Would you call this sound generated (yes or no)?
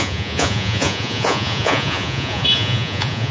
yes